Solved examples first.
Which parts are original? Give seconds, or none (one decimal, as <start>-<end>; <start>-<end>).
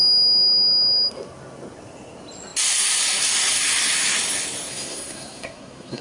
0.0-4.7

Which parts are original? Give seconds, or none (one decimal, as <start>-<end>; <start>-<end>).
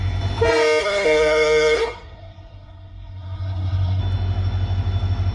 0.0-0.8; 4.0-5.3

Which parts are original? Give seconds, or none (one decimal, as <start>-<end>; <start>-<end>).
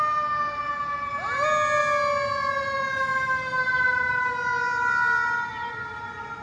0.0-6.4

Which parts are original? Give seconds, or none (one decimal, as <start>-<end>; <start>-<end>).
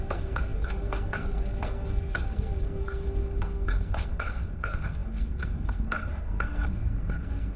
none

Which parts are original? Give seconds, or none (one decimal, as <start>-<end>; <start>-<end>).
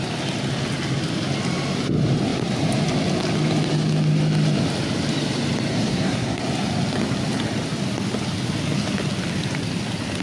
0.0-5.7; 6.4-10.2